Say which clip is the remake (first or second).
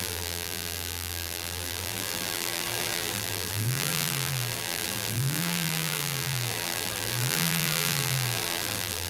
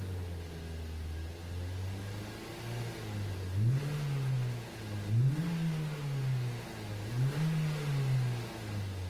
first